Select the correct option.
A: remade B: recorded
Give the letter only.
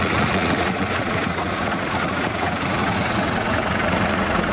A